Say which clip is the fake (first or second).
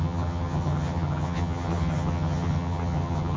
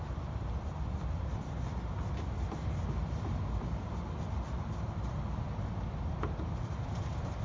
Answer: first